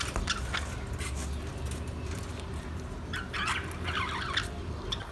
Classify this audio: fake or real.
real